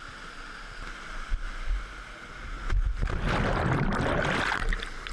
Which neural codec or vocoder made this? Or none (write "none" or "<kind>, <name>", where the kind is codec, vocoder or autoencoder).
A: none